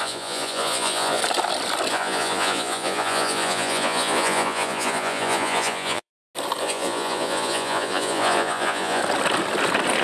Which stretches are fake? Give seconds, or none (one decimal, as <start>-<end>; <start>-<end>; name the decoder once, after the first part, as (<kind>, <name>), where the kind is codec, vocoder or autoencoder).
0.0-1.2 (vocoder, Vocos); 1.9-6.1; 6.6-9.0